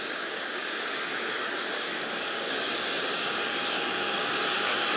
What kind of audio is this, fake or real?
fake